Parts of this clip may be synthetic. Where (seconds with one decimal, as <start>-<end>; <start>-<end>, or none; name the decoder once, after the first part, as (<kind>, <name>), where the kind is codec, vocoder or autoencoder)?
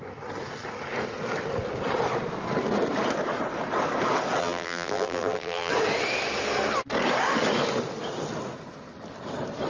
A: 4.4-5.7 (vocoder, BigVGAN v2)